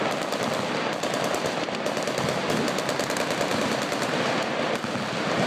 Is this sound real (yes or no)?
yes